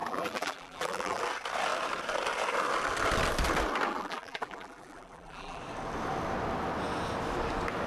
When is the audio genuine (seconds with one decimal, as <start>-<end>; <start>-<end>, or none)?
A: 1.2-3.9; 5.6-7.9